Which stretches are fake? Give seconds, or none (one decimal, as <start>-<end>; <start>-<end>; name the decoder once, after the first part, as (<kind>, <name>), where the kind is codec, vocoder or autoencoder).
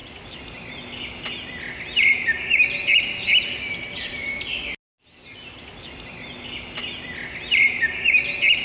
none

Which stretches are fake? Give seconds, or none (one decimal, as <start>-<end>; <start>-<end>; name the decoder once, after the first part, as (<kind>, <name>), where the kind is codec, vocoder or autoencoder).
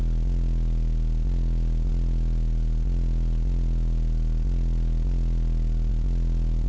none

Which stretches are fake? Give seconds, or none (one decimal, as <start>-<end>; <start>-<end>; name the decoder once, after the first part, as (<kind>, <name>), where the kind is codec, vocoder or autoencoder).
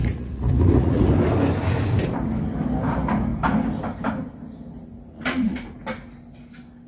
0.0-1.1 (vocoder, Vocos); 5.1-5.8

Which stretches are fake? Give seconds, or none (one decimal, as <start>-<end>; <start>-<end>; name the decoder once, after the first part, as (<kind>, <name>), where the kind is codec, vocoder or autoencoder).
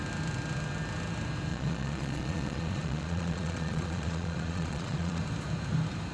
1.5-5.2 (vocoder, Vocos)